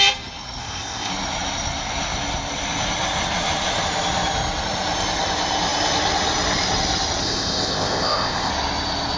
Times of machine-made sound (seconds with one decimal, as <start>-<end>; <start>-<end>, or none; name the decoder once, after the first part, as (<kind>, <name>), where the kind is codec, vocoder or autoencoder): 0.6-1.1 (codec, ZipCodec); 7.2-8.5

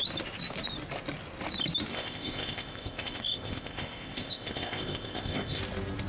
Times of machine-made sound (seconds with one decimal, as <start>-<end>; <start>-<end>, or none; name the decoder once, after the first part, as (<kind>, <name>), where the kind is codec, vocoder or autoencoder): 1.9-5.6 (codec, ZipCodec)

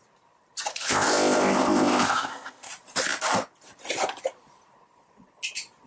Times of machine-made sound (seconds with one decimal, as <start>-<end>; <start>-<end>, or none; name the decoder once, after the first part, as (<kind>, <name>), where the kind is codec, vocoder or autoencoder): 0.7-2.7 (codec, ZipCodec)

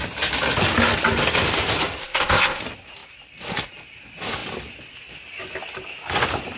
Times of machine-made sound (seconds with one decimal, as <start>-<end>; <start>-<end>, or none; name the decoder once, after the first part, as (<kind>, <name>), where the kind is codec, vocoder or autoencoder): 2.0-2.6 (codec, ZipCodec)

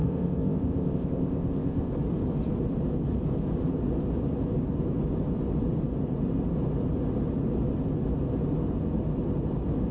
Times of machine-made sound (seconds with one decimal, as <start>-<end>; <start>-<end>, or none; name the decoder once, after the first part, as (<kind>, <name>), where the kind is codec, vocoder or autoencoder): 0.0-1.9 (codec, ZipCodec)

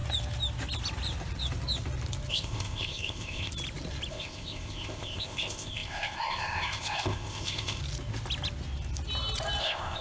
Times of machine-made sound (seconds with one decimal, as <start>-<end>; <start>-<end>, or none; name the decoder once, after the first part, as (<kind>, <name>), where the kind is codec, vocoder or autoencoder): 2.3-3.5 (codec, ZipCodec); 4.1-7.8; 9.6-10.0

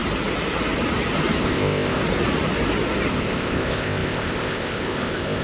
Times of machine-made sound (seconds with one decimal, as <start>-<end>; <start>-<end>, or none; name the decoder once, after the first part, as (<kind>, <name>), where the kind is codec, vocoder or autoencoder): 1.4-2.0 (codec, ZipCodec); 3.1-5.4